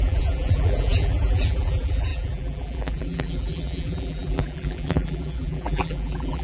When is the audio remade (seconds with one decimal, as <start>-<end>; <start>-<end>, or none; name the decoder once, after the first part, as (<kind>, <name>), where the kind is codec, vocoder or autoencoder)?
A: 0.0-6.4 (vocoder, BigVGAN v2)

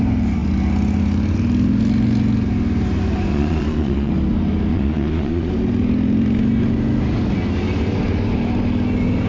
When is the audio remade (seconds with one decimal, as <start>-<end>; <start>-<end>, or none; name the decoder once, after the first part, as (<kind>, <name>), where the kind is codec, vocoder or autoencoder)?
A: 3.3-4.1 (vocoder, Vocos); 4.7-5.5

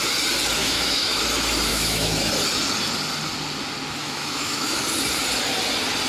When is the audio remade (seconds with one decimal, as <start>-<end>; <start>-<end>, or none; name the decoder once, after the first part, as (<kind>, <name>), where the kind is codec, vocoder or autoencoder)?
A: 0.6-1.2 (autoencoder, DAC-VAE); 1.7-2.3; 4.0-4.8

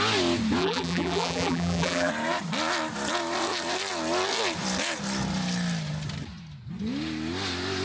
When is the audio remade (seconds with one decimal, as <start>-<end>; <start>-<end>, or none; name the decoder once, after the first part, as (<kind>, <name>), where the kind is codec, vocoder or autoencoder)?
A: 0.6-2.1 (vocoder, BigVGAN v2)

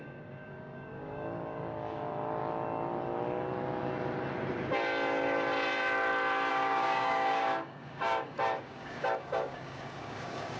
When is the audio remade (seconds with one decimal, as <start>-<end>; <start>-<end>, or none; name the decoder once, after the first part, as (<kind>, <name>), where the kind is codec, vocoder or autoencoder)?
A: 0.0-2.4 (codec, DAC); 6.5-10.6

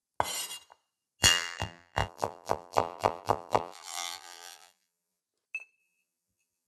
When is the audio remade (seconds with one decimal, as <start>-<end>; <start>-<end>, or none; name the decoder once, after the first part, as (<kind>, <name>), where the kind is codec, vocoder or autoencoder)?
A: 1.2-5.2 (vocoder, BigVGAN v2); 5.8-6.7

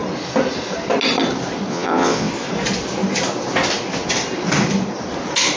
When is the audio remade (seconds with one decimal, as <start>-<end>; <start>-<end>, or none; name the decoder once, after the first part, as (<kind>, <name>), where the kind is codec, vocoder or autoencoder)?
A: 1.7-2.3 (vocoder, WaveNeXt)

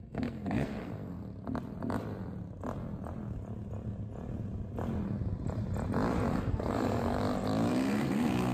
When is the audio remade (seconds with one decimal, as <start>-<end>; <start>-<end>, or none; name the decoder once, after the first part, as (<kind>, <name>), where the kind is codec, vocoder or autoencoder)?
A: 0.0-1.2 (codec, SNAC); 6.3-7.2; 7.7-8.5